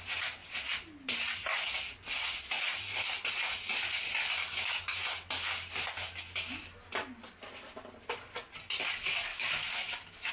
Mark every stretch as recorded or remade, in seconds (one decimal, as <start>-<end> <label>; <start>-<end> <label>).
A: 0.0-9.3 recorded; 9.3-10.3 remade